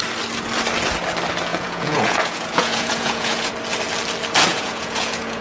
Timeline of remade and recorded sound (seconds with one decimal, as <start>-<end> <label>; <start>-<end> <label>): 0.0-1.5 recorded; 1.5-3.5 remade; 3.5-4.5 recorded; 4.5-5.4 remade